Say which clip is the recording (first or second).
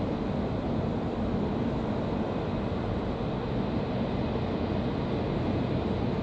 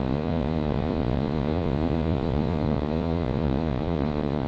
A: first